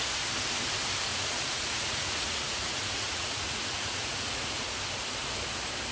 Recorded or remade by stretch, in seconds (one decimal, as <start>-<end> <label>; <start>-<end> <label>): 0.0-1.1 recorded; 1.1-4.6 remade; 4.6-5.9 recorded